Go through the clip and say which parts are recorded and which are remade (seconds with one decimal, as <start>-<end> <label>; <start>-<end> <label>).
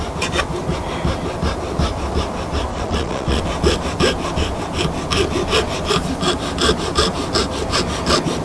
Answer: 0.0-2.7 recorded; 2.7-3.4 remade; 3.4-8.4 recorded